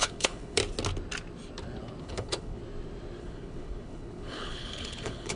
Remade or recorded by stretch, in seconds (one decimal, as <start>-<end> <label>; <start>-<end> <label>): 0.0-0.6 remade; 0.6-2.0 recorded; 2.0-2.6 remade; 2.6-3.2 recorded; 3.2-5.4 remade